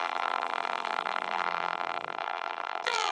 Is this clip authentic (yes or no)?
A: no